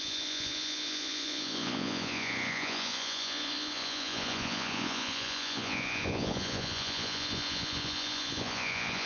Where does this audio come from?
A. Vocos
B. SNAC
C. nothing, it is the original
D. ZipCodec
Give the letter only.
A